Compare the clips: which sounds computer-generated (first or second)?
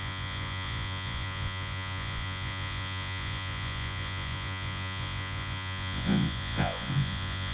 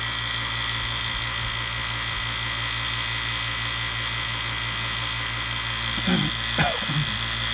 first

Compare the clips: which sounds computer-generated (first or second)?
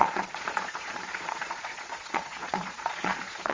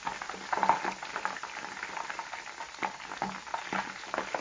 first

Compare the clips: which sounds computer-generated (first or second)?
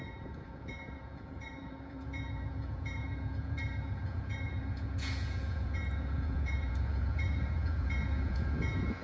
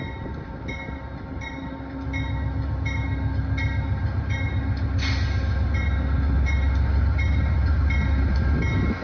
first